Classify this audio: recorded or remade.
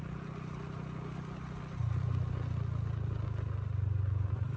recorded